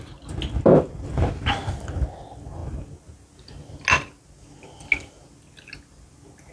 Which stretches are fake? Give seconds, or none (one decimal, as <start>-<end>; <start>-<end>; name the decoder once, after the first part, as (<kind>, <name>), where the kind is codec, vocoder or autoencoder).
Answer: none